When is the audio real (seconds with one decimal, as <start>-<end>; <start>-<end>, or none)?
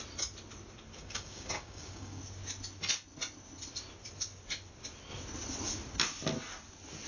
0.0-0.9; 2.2-7.1